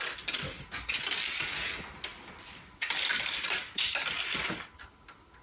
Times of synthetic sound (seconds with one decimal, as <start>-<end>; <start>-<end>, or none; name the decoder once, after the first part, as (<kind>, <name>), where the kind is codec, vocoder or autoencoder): 2.1-4.8 (vocoder, BigVGAN v2)